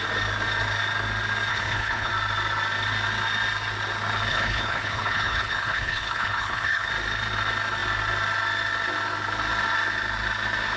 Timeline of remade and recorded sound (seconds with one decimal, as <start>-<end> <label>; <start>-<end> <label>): 0.0-1.5 recorded; 1.5-2.1 remade; 2.1-4.3 recorded; 4.3-6.9 remade; 6.9-10.8 recorded